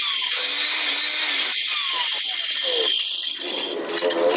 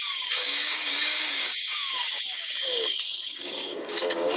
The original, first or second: first